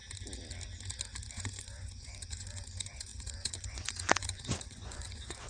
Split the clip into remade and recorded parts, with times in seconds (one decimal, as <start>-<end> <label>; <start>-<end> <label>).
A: 0.0-1.3 recorded; 1.3-5.5 remade